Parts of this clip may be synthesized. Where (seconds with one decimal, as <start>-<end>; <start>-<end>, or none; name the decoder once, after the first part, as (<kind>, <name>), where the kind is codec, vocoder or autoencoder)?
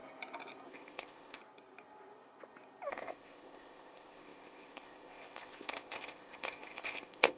0.7-1.4 (codec, ZipCodec); 2.9-7.4